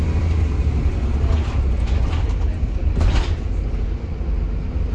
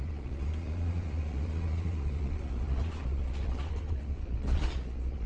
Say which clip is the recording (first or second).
first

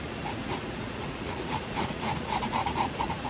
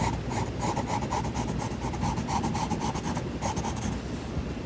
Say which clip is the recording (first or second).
second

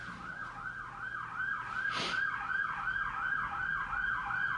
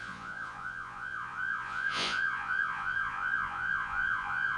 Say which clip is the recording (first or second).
first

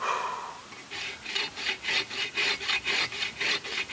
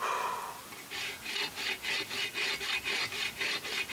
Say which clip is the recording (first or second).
second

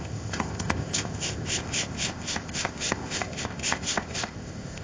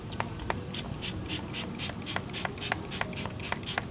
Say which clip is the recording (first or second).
second